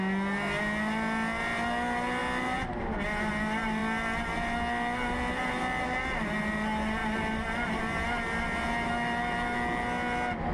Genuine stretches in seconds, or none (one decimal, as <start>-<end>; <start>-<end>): 0.0-10.5